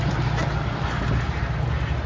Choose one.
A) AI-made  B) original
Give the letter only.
B